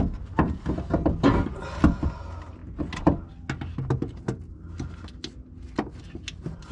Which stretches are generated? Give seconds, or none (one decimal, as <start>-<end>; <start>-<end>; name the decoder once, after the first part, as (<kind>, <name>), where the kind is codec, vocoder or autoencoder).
none